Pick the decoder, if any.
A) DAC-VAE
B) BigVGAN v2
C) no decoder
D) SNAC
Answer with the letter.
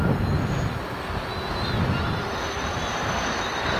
C